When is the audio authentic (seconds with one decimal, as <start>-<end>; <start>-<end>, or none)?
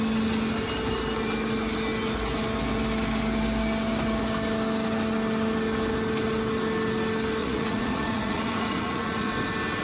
0.0-7.4; 9.3-9.8